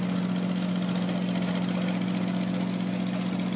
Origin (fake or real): real